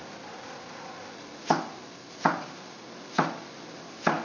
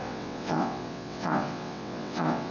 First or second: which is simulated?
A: second